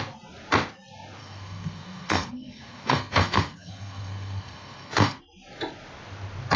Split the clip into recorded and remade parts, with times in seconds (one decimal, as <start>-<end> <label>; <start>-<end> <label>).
0.0-1.2 recorded; 1.2-5.2 remade; 5.2-6.6 recorded